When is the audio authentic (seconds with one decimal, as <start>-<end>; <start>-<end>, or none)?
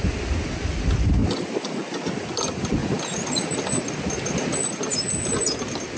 0.0-1.2; 1.9-2.8; 3.5-6.0